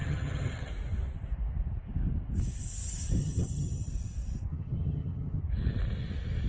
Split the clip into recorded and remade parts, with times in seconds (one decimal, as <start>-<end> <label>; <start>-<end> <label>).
0.0-0.7 remade; 0.7-3.2 recorded; 3.2-3.9 remade; 3.9-4.5 recorded; 4.5-5.4 remade; 5.4-6.5 recorded